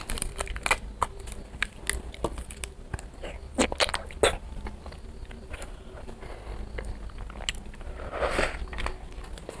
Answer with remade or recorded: recorded